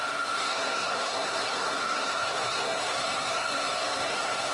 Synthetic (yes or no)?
yes